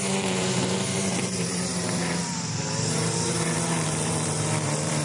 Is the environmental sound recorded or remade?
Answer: remade